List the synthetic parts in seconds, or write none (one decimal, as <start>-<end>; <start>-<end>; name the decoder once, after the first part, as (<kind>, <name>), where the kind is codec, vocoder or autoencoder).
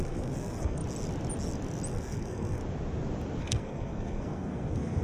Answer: 0.0-0.8 (codec, SNAC); 1.9-2.6; 3.4-5.0